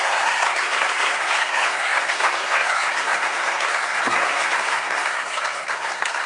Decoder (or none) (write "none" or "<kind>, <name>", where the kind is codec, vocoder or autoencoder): codec, SNAC